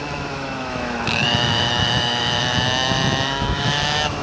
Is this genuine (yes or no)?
no